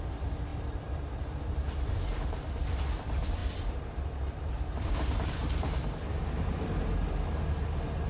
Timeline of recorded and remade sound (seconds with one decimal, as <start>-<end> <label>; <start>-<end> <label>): 0.0-8.1 recorded